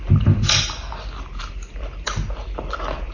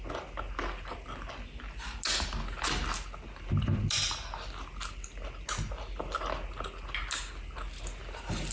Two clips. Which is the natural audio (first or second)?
second